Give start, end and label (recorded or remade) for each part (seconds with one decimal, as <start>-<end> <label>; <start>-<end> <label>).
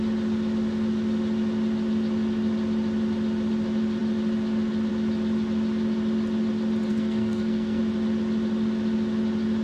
0.0-6.9 recorded; 6.9-7.8 remade; 7.8-9.6 recorded